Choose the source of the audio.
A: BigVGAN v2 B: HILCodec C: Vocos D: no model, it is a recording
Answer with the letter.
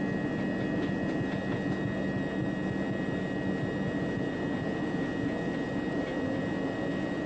D